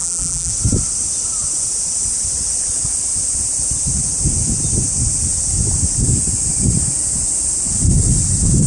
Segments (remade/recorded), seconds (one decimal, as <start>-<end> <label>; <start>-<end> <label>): 0.0-0.5 remade; 0.5-8.7 recorded